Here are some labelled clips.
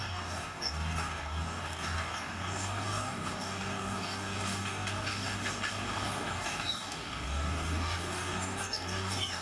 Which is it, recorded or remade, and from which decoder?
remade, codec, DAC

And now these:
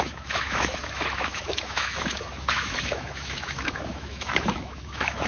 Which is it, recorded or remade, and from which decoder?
remade, autoencoder, DAC-VAE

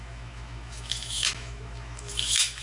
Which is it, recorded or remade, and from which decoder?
remade, autoencoder, DAC-VAE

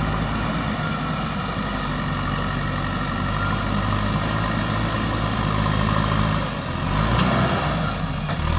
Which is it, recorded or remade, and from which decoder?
recorded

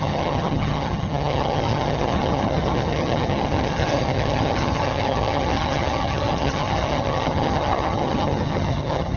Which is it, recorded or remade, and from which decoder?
remade, vocoder, HiFi-GAN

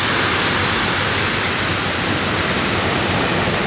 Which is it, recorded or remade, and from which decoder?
recorded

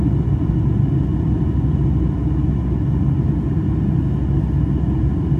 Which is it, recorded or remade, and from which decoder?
recorded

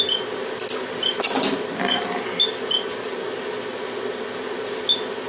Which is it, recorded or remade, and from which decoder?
recorded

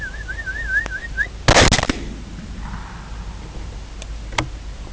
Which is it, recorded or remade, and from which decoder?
recorded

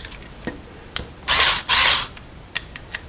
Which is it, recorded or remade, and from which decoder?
remade, vocoder, BigVGAN v2